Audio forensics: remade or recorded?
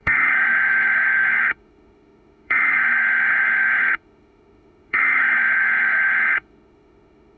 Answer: remade